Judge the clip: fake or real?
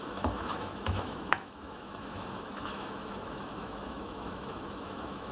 fake